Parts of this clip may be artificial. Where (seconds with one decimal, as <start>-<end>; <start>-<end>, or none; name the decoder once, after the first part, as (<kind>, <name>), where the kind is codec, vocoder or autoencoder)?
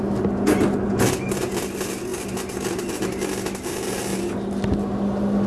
none